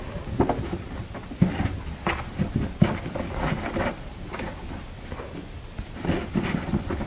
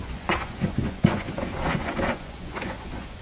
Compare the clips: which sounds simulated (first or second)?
second